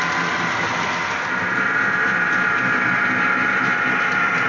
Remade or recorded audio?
recorded